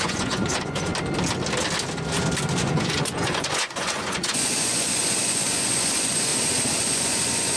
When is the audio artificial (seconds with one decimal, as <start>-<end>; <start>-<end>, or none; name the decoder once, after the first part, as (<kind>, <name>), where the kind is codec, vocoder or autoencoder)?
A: 0.0-0.9 (vocoder, Vocos); 2.6-6.3; 6.8-7.6